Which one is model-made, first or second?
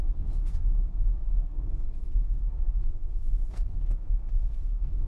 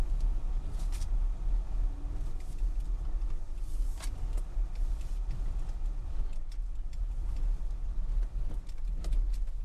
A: first